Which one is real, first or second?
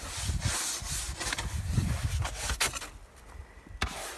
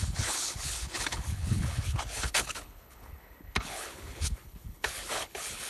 first